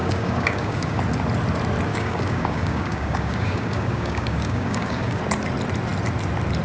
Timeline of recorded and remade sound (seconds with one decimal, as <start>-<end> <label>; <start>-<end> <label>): 0.0-1.0 remade; 1.0-1.9 recorded; 1.9-5.2 remade; 5.2-6.6 recorded